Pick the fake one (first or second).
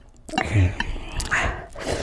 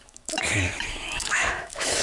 second